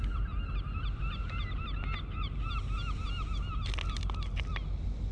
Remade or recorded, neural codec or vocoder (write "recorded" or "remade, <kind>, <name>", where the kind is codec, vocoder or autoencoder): recorded